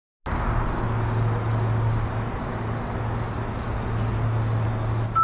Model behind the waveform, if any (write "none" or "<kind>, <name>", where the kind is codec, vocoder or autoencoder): none